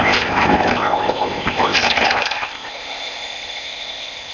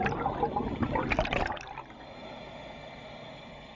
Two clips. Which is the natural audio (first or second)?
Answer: second